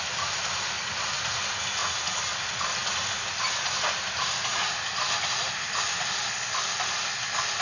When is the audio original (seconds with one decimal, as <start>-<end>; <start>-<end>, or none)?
0.0-7.6